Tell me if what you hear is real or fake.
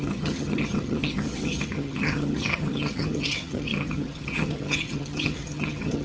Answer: fake